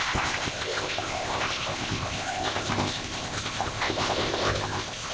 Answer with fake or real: fake